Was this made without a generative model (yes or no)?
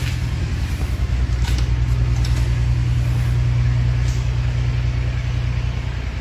yes